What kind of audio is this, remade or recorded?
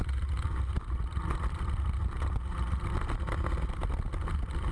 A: recorded